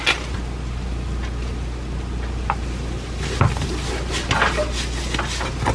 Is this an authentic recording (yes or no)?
yes